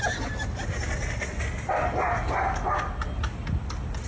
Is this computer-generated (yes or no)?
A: no